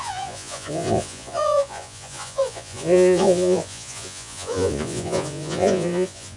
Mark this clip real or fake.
fake